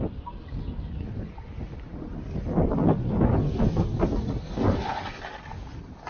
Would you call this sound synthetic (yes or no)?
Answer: no